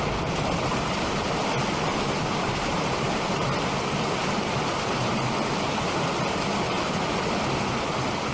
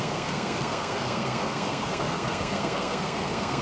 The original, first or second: first